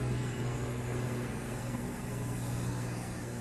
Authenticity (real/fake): fake